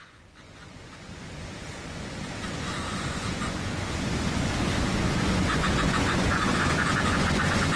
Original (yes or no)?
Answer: no